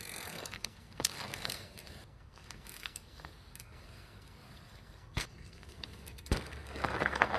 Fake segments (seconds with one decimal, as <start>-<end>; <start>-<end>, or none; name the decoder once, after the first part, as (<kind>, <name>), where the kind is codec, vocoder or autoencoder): 0.0-7.4 (codec, SNAC)